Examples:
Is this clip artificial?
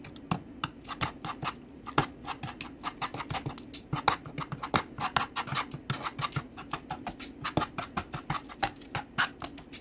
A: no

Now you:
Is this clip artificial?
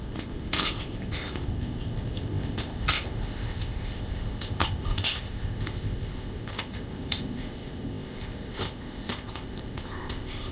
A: yes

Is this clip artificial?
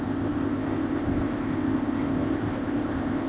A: yes